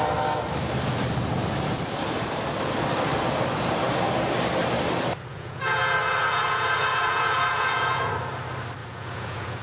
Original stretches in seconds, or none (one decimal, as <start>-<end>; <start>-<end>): 0.0-5.3; 8.1-8.8